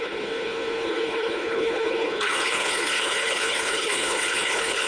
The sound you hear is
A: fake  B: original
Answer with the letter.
A